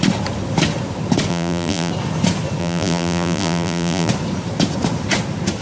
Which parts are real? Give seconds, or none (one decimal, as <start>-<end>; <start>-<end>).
0.0-1.3; 1.9-2.6; 4.1-5.6